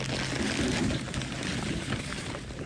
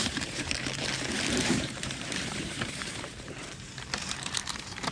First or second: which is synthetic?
second